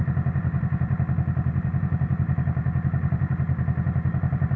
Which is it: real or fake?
real